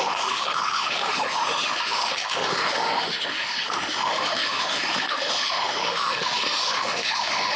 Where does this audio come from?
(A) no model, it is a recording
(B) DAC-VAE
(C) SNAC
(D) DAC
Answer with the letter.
B